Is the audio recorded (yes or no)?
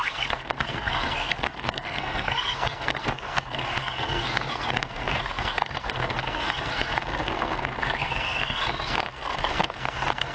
no